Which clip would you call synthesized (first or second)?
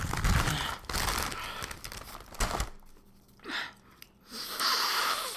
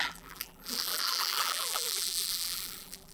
second